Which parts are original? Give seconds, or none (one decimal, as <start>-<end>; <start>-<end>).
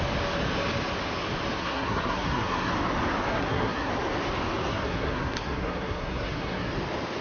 0.0-1.6; 2.7-3.3; 3.9-4.7; 6.7-7.2